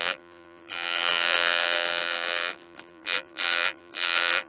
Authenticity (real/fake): fake